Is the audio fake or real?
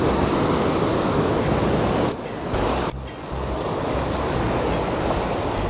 real